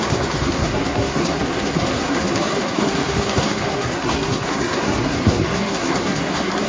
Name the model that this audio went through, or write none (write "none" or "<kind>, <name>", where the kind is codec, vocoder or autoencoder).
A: codec, SNAC